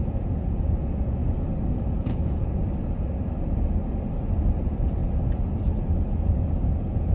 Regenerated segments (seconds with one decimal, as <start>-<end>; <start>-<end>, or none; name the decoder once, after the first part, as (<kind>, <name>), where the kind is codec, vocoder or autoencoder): 0.0-1.2 (vocoder, Vocos); 1.8-2.6; 4.6-5.0; 6.3-7.1